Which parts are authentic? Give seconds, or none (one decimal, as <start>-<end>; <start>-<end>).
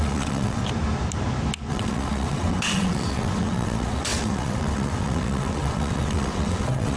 0.6-1.7